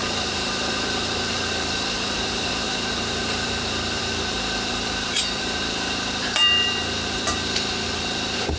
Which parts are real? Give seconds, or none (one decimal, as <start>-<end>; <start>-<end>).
none